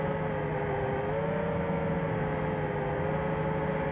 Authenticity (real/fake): real